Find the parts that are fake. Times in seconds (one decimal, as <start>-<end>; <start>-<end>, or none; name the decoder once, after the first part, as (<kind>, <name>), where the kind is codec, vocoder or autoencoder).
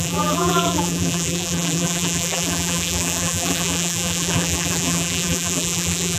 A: 0.0-6.2 (vocoder, BigVGAN v2)